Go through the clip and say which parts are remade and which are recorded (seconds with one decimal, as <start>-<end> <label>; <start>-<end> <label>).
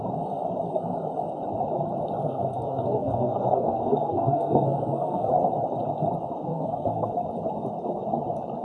0.0-2.2 recorded; 2.2-5.3 remade; 5.3-6.5 recorded; 6.5-7.1 remade; 7.1-8.6 recorded